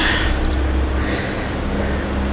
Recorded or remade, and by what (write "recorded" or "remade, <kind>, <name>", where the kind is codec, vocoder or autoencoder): recorded